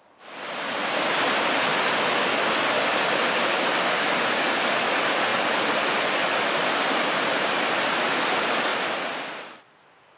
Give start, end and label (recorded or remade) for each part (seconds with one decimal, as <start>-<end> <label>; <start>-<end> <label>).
0.0-10.2 recorded